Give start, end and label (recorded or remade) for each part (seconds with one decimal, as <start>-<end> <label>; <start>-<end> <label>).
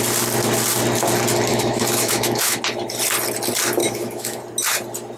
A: 0.0-1.5 recorded; 1.5-2.6 remade; 2.6-3.8 recorded; 3.8-4.4 remade; 4.4-5.2 recorded